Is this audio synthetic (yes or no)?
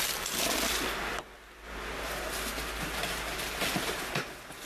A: no